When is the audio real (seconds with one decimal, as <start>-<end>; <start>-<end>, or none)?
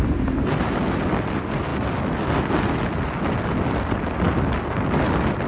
0.0-5.5